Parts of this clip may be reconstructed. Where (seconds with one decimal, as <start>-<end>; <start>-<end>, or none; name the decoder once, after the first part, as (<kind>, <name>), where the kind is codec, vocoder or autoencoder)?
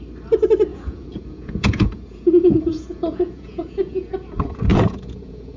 0.7-4.1 (vocoder, Vocos); 4.7-5.6